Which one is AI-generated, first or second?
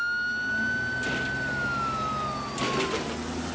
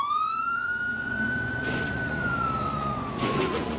second